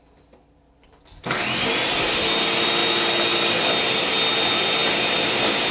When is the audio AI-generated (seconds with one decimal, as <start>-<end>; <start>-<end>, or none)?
none